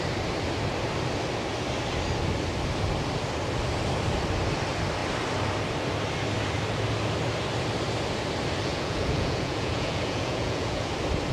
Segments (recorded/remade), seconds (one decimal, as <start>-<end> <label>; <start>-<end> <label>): 0.0-8.7 recorded; 8.7-10.9 remade; 10.9-11.3 recorded